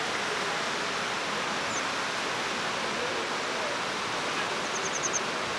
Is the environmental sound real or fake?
real